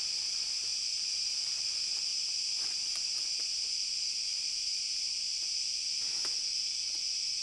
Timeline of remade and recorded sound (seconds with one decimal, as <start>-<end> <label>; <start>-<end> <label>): 0.0-0.7 recorded; 0.7-1.6 remade; 1.6-2.1 recorded; 2.1-3.2 remade; 3.2-4.3 recorded; 4.3-5.4 remade; 5.4-7.4 recorded

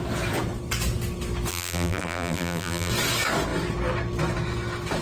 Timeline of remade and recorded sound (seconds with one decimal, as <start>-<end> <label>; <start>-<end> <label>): 0.0-1.5 recorded; 1.5-2.9 remade; 2.9-5.0 recorded